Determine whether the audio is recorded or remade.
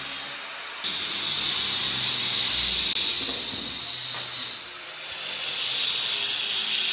recorded